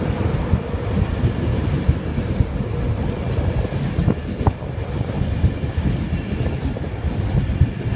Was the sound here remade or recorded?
recorded